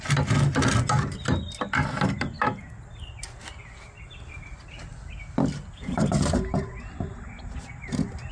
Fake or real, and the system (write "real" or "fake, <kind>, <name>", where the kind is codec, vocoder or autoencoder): real